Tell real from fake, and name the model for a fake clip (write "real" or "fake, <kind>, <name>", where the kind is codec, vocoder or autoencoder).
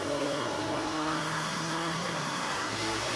fake, codec, SNAC